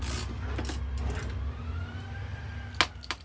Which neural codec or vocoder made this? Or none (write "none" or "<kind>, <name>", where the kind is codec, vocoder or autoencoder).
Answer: none